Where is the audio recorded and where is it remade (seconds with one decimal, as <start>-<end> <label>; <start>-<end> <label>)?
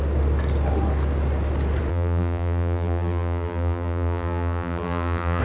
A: 0.0-1.9 recorded; 1.9-5.4 remade